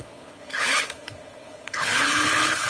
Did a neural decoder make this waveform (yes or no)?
yes